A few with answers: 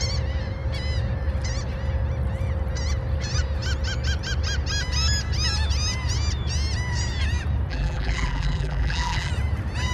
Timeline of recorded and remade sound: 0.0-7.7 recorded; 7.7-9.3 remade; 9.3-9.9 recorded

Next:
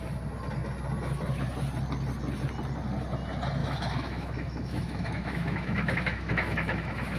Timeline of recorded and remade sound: 0.0-3.6 recorded; 3.6-7.2 remade

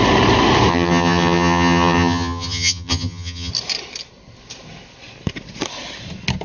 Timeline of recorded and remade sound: 0.0-0.7 recorded; 0.7-3.5 remade; 3.5-6.4 recorded

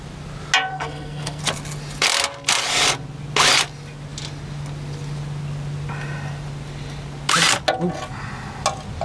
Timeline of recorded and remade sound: 0.0-0.7 recorded; 0.7-1.4 remade; 1.4-9.0 recorded

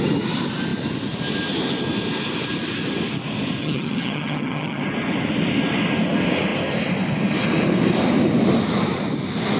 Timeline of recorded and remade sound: 0.0-3.6 recorded; 3.6-4.8 remade; 4.8-9.6 recorded

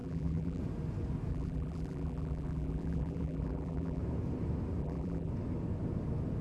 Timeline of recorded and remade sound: 0.0-0.6 remade; 0.6-1.3 recorded; 1.3-4.0 remade; 4.0-4.8 recorded; 4.8-5.3 remade; 5.3-6.4 recorded